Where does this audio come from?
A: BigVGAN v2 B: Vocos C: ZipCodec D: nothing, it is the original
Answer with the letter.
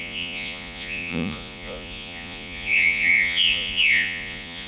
B